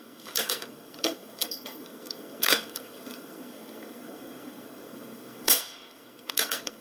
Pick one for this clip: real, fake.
fake